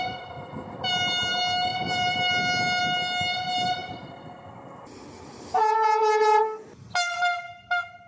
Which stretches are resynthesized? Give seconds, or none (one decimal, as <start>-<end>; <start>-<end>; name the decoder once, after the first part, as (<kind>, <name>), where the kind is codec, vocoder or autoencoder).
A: none